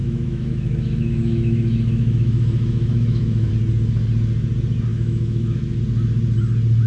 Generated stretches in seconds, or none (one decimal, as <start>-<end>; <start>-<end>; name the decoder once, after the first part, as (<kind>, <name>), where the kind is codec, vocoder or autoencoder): 0.0-3.5 (autoencoder, DAC-VAE); 4.9-5.8